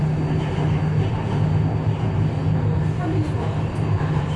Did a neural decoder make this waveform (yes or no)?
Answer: no